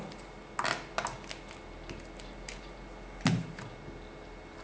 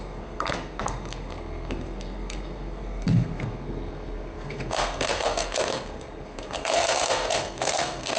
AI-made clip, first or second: second